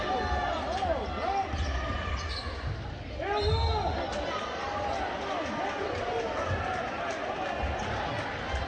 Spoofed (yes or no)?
no